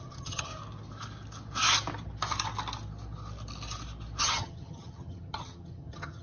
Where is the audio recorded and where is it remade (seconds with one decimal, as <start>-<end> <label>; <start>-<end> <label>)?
0.0-0.5 remade; 0.5-4.2 recorded; 4.2-6.2 remade